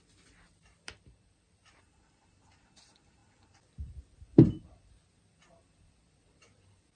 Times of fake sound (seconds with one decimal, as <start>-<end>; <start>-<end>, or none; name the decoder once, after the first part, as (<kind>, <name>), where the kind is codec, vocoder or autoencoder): 0.0-7.0 (vocoder, BigVGAN v2)